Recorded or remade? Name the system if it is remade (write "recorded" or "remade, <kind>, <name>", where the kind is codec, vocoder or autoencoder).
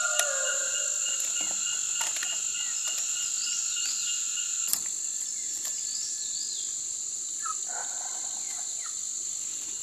recorded